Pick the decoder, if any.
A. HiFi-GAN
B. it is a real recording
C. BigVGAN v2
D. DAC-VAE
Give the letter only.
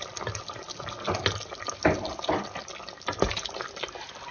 B